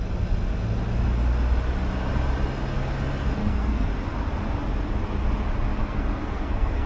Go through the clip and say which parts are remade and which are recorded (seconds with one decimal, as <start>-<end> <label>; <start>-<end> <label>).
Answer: 0.0-3.4 recorded; 3.4-3.9 remade; 3.9-5.8 recorded; 5.8-6.9 remade